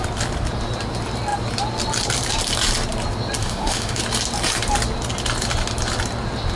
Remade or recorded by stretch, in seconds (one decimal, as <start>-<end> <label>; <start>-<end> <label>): 0.0-3.4 recorded; 3.4-4.0 remade; 4.0-6.6 recorded